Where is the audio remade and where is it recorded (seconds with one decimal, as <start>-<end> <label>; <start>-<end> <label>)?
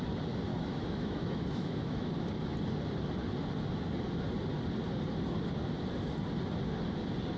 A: 0.0-0.5 recorded; 0.5-2.1 remade; 2.1-7.4 recorded